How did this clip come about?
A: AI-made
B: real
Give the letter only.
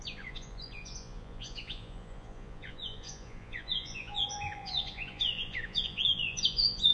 A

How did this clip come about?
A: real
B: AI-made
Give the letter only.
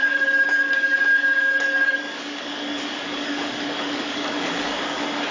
B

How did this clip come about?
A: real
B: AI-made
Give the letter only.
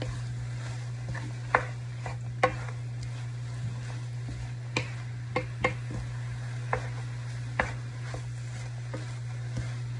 A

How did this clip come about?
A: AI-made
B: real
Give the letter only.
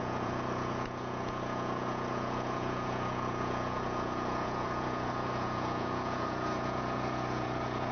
A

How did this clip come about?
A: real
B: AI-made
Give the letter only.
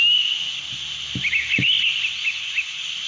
A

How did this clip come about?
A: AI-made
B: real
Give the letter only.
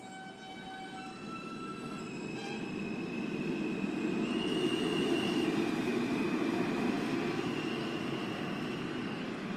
B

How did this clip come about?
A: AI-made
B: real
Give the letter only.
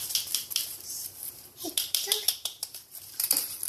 A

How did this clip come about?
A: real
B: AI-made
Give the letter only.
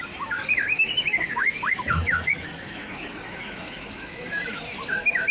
B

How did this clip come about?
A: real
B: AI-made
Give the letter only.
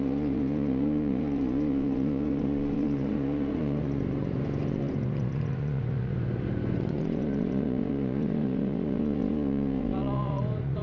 B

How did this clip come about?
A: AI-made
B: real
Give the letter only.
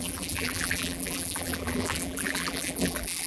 A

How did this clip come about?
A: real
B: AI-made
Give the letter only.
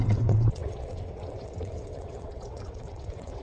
B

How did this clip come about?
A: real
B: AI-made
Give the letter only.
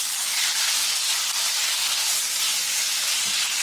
A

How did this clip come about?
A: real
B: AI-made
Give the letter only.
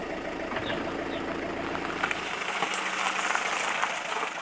A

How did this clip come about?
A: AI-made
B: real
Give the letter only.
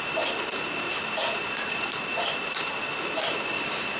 A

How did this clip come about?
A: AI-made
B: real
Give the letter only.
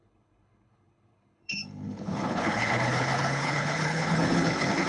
A